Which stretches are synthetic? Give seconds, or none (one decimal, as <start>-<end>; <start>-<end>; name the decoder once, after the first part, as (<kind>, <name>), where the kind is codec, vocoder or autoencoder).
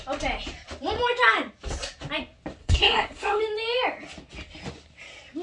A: 2.6-3.4 (codec, SNAC)